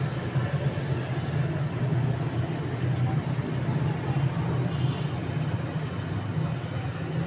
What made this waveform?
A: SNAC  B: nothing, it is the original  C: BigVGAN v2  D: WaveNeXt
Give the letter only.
B